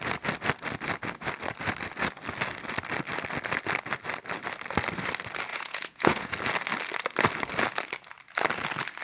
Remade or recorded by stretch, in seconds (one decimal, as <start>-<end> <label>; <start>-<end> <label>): 0.0-5.5 recorded; 5.5-6.3 remade; 6.3-9.0 recorded